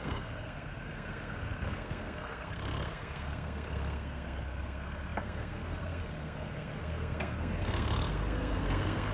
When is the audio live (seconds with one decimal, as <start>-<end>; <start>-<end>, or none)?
none